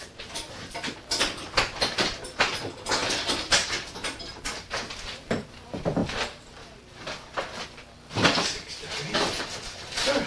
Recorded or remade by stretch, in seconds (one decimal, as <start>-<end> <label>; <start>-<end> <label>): 0.0-3.0 remade; 3.0-5.0 recorded; 5.0-10.3 remade